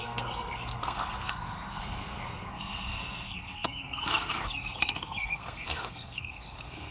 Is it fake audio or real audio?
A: fake